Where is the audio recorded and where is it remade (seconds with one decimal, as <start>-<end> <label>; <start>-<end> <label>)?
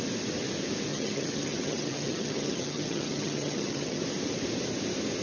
0.0-0.9 recorded; 0.9-4.0 remade; 4.0-5.2 recorded